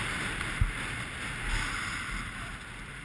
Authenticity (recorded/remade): recorded